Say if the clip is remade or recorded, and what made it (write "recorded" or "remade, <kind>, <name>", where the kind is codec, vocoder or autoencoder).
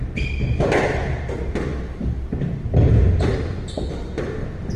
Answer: recorded